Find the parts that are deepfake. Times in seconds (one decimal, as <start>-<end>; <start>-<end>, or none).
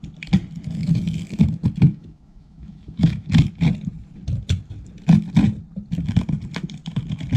1.9-3.3